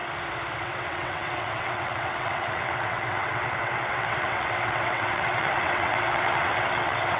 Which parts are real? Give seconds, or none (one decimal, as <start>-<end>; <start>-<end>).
0.0-0.6

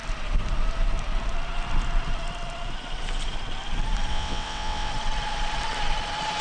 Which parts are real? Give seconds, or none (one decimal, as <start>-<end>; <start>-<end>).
0.0-4.1; 4.9-6.4

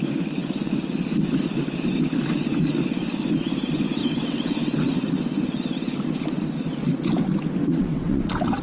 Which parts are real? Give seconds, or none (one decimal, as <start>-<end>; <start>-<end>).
0.0-4.0; 4.9-7.6

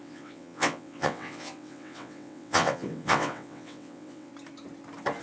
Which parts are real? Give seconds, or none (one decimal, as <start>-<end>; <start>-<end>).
4.3-5.2

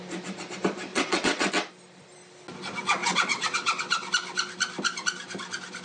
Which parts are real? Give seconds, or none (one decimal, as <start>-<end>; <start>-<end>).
0.0-0.9; 1.5-3.0; 4.1-5.8

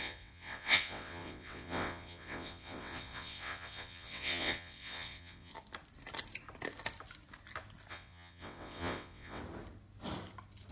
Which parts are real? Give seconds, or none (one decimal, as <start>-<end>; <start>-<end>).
5.5-7.9; 9.4-10.7

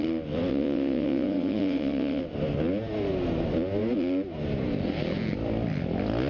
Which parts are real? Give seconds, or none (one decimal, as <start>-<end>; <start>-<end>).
0.0-0.5; 2.2-6.3